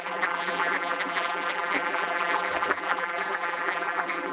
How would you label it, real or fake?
fake